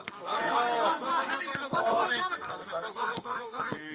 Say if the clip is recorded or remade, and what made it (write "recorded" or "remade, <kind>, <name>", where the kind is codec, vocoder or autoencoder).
remade, codec, SNAC